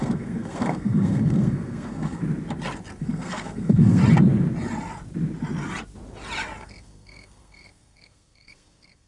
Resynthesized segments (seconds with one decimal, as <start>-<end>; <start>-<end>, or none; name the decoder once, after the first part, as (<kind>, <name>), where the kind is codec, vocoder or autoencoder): 0.0-2.2 (codec, SNAC); 3.0-4.0; 6.6-9.1